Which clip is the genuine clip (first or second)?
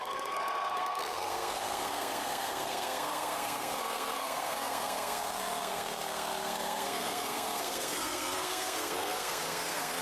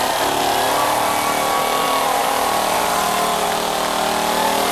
second